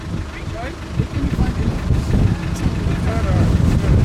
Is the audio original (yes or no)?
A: yes